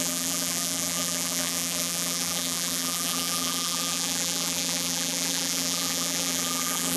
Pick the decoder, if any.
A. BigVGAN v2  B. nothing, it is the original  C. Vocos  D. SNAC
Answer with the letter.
A